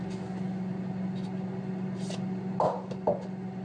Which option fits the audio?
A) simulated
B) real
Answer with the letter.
B